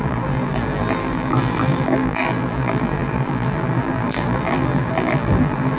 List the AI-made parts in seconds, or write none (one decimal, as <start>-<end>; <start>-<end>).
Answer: 0.0-5.8